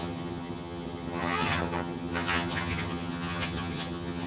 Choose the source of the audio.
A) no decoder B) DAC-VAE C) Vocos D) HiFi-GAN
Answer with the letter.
D